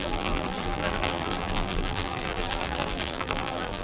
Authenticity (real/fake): fake